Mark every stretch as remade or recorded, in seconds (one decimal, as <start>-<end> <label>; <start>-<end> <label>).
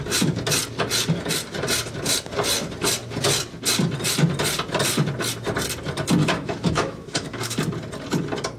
0.0-6.2 recorded; 6.2-7.6 remade; 7.6-8.6 recorded